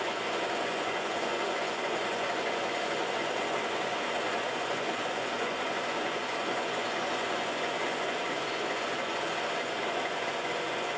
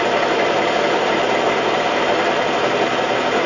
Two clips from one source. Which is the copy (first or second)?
first